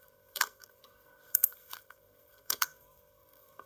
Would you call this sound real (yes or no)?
no